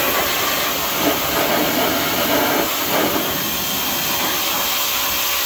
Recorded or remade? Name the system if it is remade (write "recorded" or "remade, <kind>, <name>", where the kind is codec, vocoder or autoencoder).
recorded